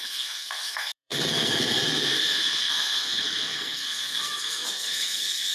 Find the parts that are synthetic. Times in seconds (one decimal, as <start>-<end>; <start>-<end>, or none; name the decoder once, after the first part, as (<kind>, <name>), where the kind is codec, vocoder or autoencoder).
0.0-5.5 (codec, SNAC)